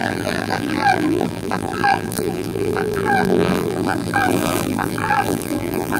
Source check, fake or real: fake